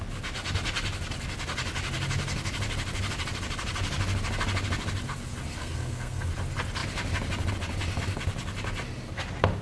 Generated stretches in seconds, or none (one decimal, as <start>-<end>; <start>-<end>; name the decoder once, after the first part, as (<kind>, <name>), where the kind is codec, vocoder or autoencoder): 5.6-6.3 (codec, SNAC)